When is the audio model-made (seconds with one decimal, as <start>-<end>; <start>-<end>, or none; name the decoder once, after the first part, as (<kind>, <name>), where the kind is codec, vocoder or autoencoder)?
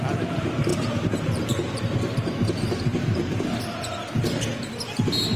0.7-3.6 (vocoder, BigVGAN v2)